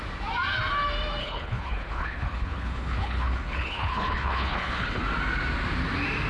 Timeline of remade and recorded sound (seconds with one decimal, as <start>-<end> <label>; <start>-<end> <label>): 0.0-1.2 recorded; 1.2-5.0 remade; 5.0-6.3 recorded